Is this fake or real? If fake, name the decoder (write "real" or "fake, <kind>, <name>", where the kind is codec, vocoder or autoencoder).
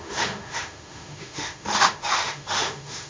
fake, autoencoder, DAC-VAE